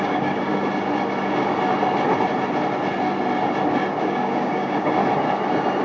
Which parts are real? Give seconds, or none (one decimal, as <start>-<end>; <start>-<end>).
0.5-4.0; 5.0-5.8